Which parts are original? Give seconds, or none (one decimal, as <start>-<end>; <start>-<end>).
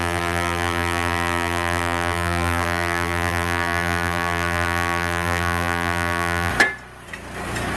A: 6.5-7.8